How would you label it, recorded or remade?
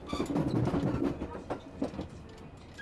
recorded